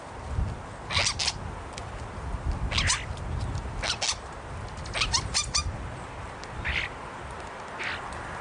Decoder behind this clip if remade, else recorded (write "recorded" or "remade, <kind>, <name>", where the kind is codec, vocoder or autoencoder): recorded